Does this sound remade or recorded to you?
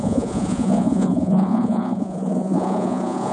remade